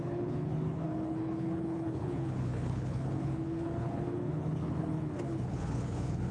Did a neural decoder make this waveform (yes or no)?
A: yes